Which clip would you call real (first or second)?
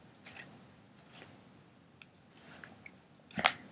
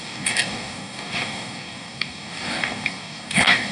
first